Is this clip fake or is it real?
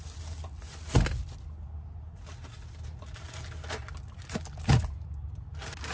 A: real